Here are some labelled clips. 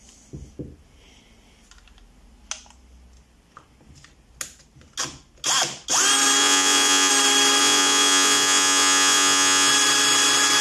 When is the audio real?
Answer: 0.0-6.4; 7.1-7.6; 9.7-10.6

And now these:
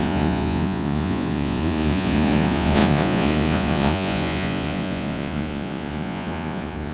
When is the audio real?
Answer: none

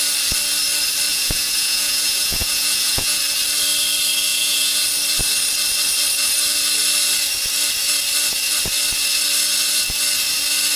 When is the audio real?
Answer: 0.0-1.1; 3.2-4.3; 4.8-10.8

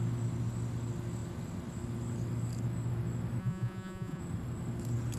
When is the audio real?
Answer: 0.0-3.4; 4.2-5.2

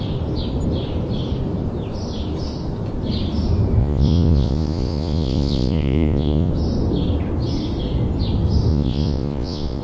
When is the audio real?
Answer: 0.0-3.8; 6.5-8.7

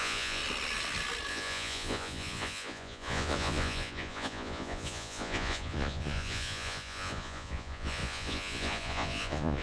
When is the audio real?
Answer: 0.4-1.3

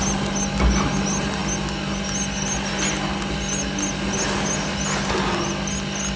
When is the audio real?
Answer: 0.0-6.2

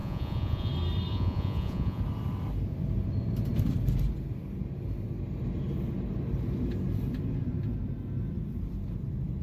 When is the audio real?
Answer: 0.7-1.1; 2.0-9.4